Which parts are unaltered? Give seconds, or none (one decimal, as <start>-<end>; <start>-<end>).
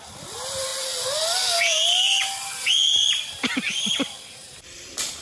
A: none